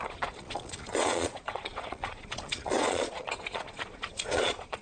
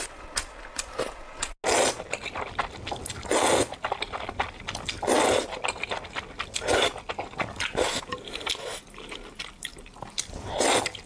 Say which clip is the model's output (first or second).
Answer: first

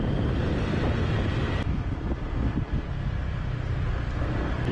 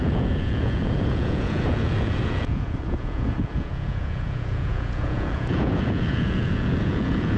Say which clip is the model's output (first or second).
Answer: second